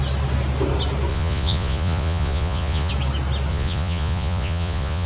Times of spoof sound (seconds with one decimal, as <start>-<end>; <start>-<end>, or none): 1.1-2.9; 3.5-5.1